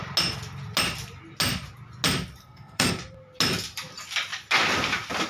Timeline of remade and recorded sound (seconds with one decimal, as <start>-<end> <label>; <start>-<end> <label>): 0.0-2.4 recorded; 2.4-2.9 remade; 2.9-5.3 recorded